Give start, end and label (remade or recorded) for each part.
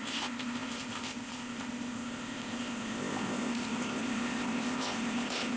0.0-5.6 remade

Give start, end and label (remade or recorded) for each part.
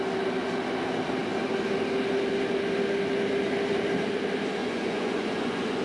0.0-4.6 recorded; 4.6-5.8 remade